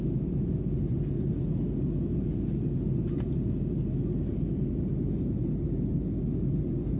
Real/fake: real